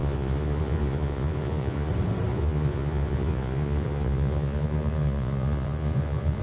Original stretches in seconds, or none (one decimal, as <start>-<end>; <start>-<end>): 1.9-2.3